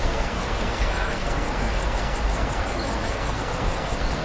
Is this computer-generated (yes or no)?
yes